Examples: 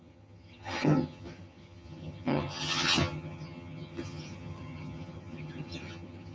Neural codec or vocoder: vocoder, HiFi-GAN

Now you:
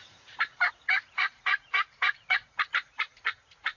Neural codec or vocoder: vocoder, Vocos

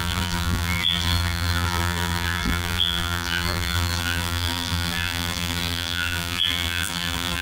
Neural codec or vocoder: vocoder, BigVGAN v2